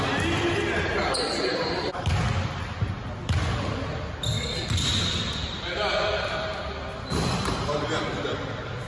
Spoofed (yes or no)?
no